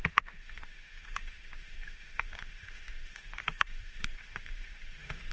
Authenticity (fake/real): fake